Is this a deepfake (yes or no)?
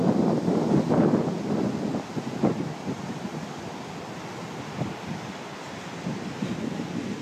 no